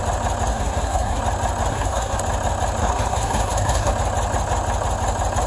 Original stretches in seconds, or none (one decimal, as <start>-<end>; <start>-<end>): 0.0-0.5; 1.2-1.7; 2.2-2.8; 3.9-5.5